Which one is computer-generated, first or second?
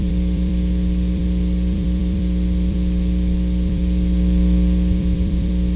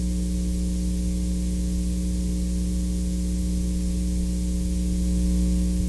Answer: first